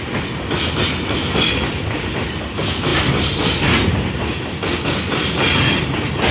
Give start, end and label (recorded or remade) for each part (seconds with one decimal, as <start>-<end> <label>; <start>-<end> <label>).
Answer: 0.0-6.3 recorded